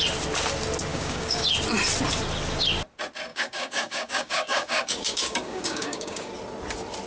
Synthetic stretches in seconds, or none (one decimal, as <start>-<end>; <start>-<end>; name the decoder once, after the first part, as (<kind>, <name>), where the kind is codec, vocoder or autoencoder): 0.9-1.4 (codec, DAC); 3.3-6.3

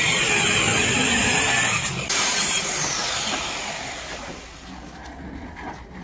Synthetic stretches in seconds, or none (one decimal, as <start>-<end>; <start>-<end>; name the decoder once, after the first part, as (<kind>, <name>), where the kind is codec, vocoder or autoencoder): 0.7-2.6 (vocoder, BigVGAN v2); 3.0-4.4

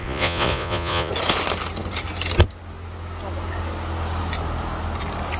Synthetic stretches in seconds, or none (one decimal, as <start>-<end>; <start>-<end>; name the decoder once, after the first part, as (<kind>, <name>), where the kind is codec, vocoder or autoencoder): 0.0-1.1 (vocoder, Vocos)